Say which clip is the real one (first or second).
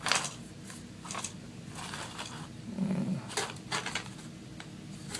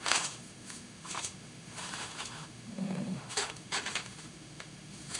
first